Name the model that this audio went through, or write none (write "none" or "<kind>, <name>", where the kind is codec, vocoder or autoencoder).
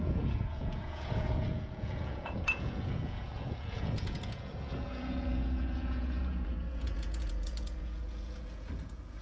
vocoder, Vocos